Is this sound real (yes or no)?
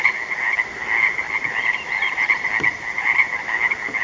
yes